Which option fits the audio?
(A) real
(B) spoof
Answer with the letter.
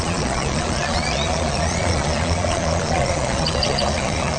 B